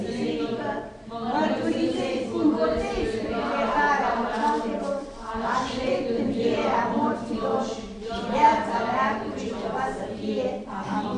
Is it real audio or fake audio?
fake